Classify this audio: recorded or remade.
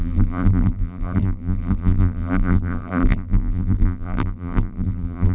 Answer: remade